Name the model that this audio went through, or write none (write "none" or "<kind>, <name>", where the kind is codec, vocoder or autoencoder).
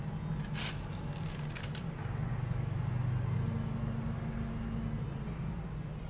none